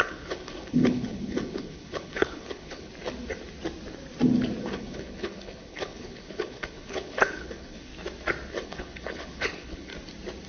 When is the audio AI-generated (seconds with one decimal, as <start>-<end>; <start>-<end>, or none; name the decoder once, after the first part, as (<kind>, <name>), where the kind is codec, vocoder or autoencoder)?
0.0-2.9 (codec, HILCodec); 4.6-7.9; 8.5-9.9